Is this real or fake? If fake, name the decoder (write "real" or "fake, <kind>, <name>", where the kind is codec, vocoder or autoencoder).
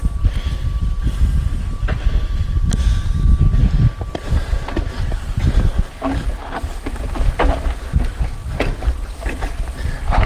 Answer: real